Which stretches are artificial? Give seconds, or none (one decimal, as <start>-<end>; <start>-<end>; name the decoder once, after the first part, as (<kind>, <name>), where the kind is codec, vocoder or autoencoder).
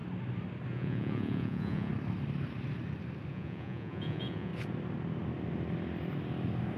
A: 0.7-1.9 (vocoder, Vocos); 3.3-4.5